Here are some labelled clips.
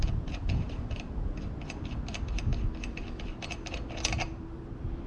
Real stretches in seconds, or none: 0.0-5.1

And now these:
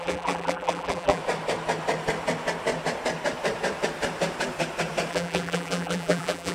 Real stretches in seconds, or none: 1.2-5.1

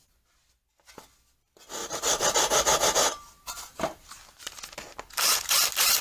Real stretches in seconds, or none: 0.0-1.8; 4.6-6.0